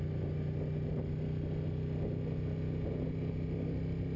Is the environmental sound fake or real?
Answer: real